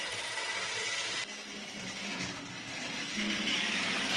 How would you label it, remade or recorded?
recorded